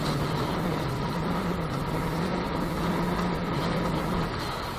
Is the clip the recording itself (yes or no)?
yes